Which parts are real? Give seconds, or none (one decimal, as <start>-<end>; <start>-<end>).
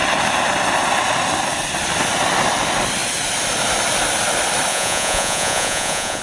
0.0-4.7